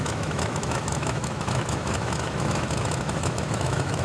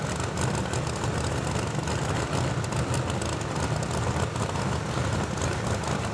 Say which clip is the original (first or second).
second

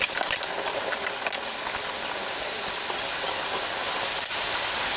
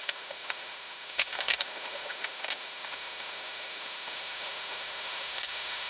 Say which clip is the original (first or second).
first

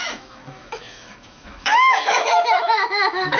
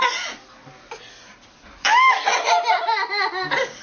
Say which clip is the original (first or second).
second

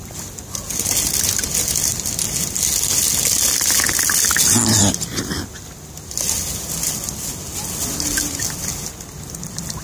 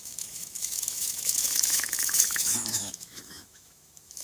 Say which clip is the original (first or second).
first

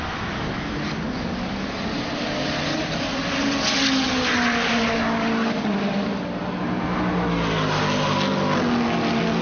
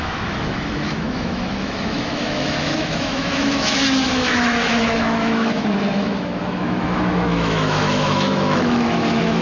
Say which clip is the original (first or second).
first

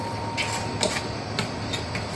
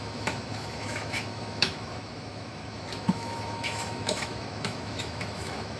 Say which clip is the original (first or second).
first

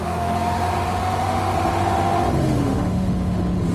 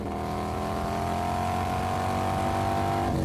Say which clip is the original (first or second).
second